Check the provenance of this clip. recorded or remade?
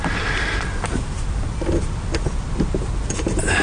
recorded